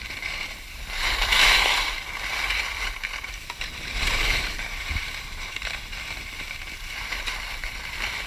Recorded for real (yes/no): no